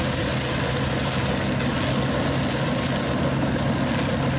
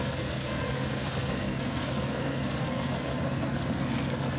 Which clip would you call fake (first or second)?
second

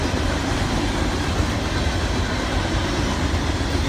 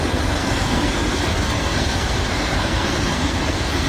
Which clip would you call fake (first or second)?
second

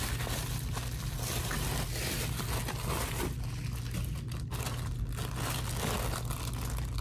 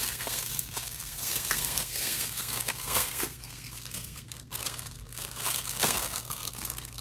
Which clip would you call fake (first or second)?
second